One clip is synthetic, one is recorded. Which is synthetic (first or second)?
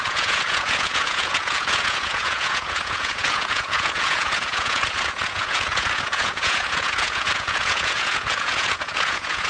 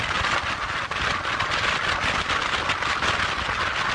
first